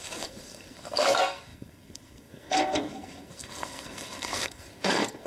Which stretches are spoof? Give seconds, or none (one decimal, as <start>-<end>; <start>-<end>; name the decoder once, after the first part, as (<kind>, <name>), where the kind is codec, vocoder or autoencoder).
0.0-5.3 (codec, SNAC)